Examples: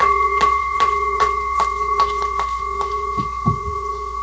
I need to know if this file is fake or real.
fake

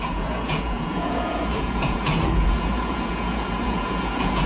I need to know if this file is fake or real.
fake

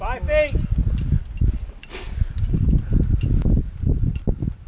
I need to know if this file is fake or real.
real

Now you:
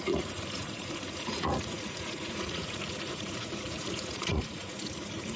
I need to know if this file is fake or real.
fake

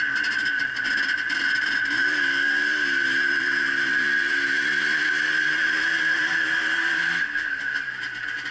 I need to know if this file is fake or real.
real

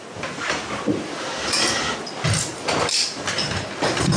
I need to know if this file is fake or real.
real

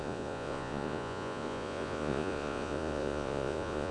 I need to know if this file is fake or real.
fake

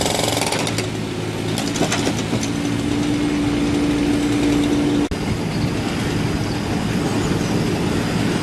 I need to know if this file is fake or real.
real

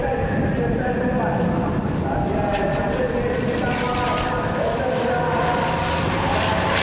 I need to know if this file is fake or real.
real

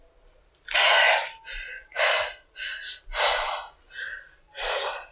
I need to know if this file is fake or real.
real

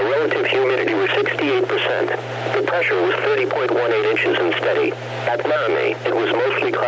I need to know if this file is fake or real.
real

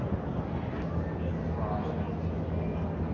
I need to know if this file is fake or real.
real